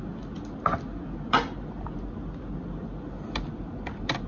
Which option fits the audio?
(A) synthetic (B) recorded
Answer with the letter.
B